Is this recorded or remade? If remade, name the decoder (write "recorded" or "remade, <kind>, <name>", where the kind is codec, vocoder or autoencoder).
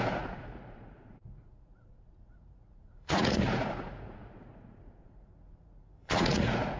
remade, vocoder, Vocos